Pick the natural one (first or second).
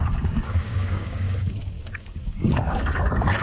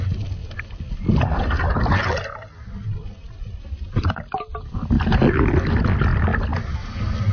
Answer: second